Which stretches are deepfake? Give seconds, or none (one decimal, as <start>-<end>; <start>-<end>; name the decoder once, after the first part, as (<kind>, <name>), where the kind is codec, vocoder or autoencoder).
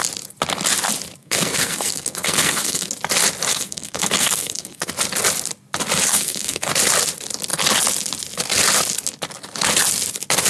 1.2-2.9 (codec, SNAC); 3.5-4.9; 6.1-6.7